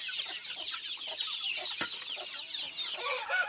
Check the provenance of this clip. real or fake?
real